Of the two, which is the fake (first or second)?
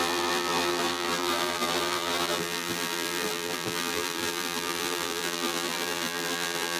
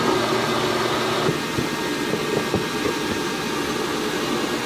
first